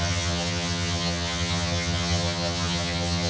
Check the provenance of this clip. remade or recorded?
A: remade